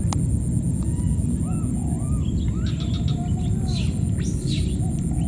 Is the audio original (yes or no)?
yes